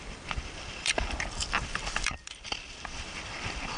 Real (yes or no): no